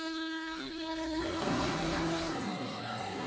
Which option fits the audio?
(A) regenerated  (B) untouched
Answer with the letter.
A